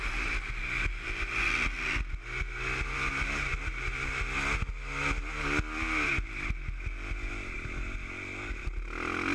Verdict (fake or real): real